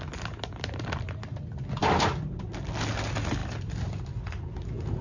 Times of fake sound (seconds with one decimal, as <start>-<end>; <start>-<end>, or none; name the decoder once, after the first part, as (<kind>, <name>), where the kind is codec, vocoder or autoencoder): 3.4-4.0 (vocoder, BigVGAN v2)